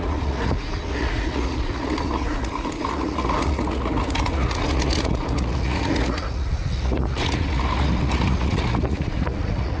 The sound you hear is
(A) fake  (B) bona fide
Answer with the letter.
A